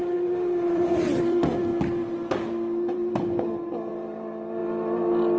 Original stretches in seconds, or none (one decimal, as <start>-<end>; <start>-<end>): 0.0-0.7; 1.7-3.9; 4.6-5.4